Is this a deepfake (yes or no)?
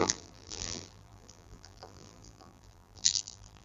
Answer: yes